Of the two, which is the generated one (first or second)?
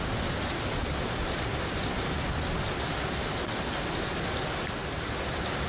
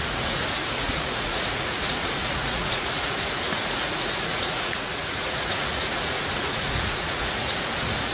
second